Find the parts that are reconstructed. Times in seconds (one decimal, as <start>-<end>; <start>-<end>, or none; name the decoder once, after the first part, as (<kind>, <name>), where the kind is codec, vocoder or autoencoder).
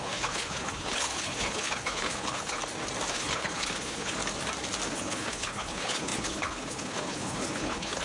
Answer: 0.0-2.6 (codec, HILCodec); 3.1-4.2; 4.9-8.0